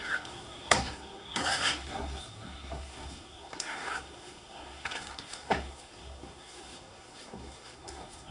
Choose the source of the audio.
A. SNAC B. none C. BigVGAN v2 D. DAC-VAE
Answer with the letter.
A